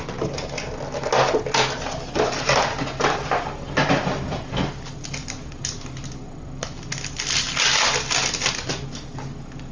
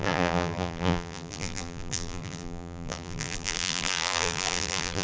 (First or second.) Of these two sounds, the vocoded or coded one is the second